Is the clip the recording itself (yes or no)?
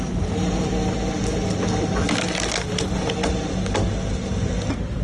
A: yes